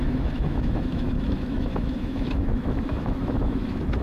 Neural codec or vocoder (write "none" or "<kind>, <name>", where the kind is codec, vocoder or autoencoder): autoencoder, DAC-VAE